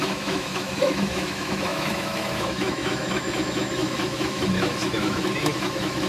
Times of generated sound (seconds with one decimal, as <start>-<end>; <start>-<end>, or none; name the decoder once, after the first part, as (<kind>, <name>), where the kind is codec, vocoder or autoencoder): 0.0-6.1 (autoencoder, DAC-VAE)